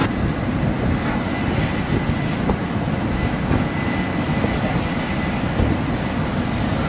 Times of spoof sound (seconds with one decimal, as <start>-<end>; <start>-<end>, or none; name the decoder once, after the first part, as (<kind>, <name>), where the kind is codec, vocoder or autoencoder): none